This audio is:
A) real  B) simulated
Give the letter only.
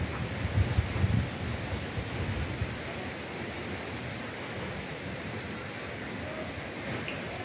A